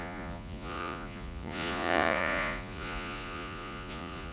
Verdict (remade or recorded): remade